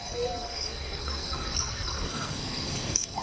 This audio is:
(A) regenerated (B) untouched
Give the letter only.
A